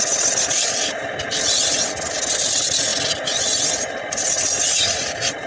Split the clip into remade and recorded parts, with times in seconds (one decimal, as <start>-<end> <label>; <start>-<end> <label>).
0.0-5.5 recorded